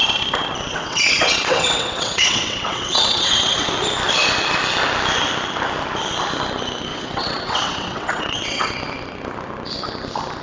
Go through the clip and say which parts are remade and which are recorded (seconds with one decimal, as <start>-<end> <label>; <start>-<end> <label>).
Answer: 0.0-0.7 recorded; 0.7-3.7 remade; 3.7-6.9 recorded; 6.9-8.7 remade; 8.7-10.4 recorded